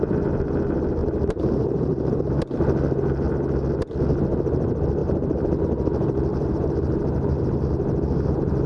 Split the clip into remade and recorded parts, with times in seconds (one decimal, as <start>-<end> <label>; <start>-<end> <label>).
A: 0.0-1.0 recorded; 1.0-2.2 remade; 2.2-5.0 recorded; 5.0-5.6 remade; 5.6-6.3 recorded; 6.3-8.7 remade